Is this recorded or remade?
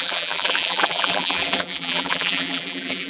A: remade